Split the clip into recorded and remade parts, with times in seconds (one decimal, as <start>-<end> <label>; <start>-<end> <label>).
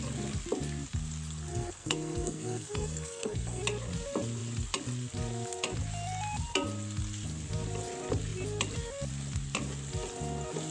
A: 0.0-1.5 recorded; 1.5-3.6 remade; 3.6-10.7 recorded